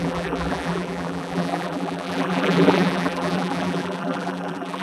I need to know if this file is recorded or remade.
remade